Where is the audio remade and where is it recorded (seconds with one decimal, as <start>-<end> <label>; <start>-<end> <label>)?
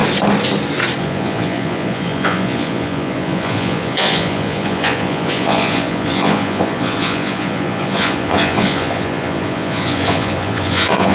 0.0-1.0 recorded; 1.0-11.1 remade